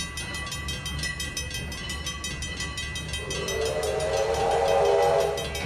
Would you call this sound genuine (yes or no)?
yes